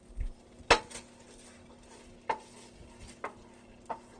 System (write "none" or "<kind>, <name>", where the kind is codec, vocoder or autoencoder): none